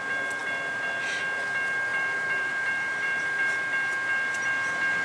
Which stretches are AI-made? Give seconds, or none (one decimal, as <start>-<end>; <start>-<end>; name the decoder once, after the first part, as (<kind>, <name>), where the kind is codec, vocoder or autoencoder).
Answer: 1.9-3.5 (vocoder, BigVGAN v2)